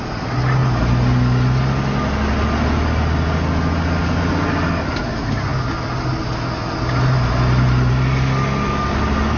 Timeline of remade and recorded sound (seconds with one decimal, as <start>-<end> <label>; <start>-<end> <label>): 0.0-9.4 recorded